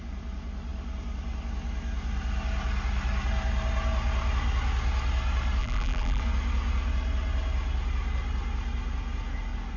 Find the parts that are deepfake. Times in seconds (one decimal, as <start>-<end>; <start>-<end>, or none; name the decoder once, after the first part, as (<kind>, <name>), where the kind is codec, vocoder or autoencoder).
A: 5.6-6.2 (vocoder, BigVGAN v2)